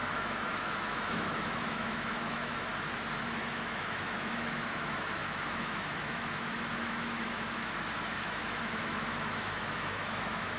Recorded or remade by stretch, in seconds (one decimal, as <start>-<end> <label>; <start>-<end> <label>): 0.0-2.7 remade; 2.7-3.3 recorded; 3.3-10.6 remade